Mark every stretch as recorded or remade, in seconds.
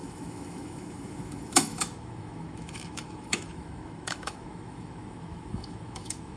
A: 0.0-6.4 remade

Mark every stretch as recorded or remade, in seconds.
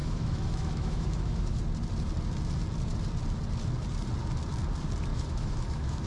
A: 0.0-1.6 remade; 1.6-5.1 recorded; 5.1-6.1 remade